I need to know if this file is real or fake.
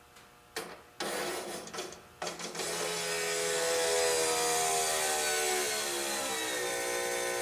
real